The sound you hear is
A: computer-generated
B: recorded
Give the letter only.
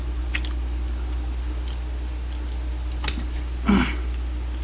B